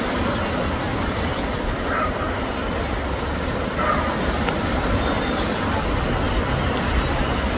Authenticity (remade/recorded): recorded